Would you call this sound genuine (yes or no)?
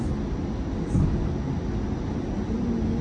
yes